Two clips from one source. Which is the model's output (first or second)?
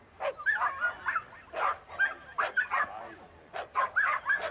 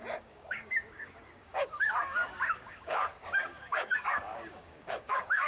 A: second